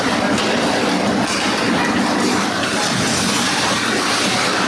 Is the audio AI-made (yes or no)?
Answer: no